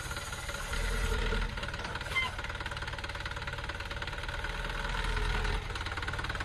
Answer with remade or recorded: recorded